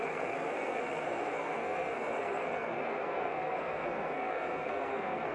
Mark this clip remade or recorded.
remade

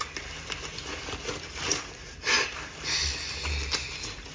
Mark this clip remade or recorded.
recorded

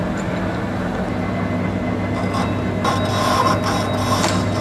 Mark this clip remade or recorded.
recorded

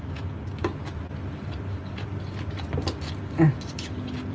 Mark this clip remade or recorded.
recorded